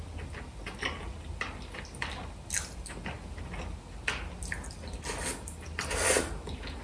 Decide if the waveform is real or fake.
real